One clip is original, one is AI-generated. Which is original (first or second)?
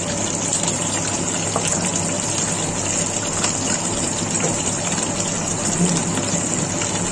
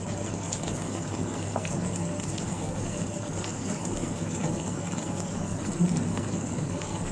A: first